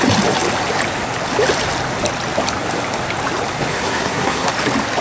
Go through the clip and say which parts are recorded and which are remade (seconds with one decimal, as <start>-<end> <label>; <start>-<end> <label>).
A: 0.0-3.7 recorded; 3.7-4.5 remade; 4.5-5.0 recorded